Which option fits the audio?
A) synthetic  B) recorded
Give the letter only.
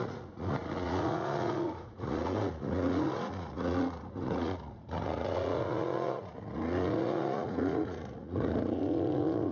A